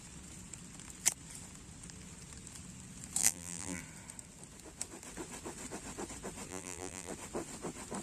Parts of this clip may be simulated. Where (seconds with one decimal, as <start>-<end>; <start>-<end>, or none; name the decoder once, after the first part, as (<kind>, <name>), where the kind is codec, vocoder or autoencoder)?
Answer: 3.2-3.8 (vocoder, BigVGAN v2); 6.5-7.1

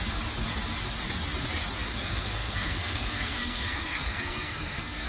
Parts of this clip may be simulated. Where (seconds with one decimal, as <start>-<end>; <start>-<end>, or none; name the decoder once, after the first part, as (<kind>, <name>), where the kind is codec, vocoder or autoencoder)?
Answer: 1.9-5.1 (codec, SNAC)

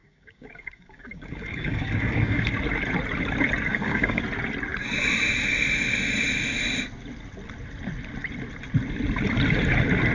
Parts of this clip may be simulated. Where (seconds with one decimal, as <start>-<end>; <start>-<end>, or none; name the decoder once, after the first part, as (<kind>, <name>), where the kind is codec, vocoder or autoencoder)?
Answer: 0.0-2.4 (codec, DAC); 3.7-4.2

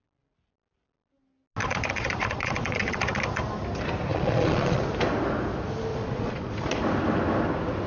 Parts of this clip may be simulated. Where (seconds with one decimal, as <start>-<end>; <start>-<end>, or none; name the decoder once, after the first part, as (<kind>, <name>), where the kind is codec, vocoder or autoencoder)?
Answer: 1.6-3.0 (vocoder, Vocos); 4.1-4.8; 5.9-6.8